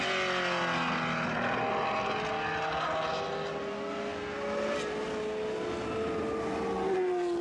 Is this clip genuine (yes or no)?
yes